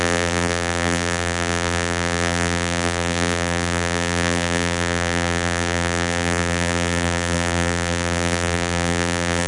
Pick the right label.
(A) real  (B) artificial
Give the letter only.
B